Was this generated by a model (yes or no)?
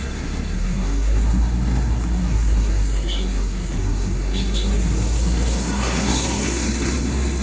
yes